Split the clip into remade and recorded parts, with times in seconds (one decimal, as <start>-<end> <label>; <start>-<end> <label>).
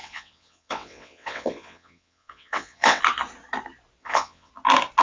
0.0-3.0 remade; 3.0-4.0 recorded; 4.0-4.5 remade; 4.5-5.0 recorded